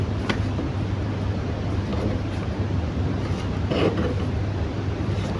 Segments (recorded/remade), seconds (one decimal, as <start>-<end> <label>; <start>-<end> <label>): 0.0-5.4 recorded